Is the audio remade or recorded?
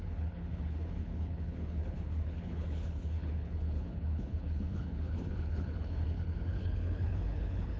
remade